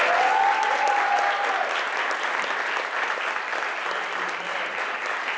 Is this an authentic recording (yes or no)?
yes